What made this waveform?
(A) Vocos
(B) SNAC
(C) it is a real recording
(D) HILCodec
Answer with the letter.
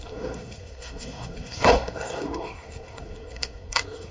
B